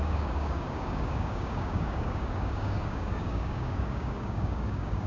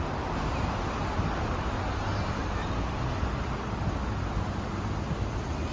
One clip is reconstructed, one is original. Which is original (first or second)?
second